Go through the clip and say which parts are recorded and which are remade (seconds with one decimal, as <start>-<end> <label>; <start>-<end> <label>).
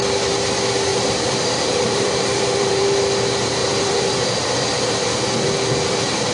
0.0-0.9 recorded; 0.9-2.8 remade; 2.8-3.6 recorded; 3.6-4.6 remade; 4.6-6.3 recorded